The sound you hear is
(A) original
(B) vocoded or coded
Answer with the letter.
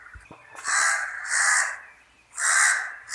A